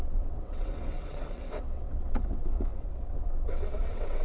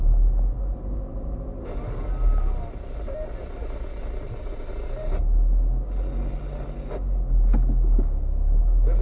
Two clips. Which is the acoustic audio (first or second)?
second